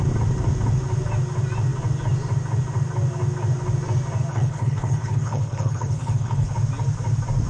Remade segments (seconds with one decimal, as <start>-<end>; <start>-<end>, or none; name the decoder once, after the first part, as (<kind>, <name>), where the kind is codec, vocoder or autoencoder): 4.3-6.5 (codec, HILCodec)